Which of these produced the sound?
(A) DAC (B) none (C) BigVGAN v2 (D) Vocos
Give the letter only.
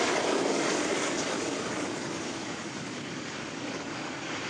A